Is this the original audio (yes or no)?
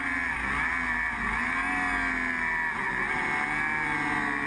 yes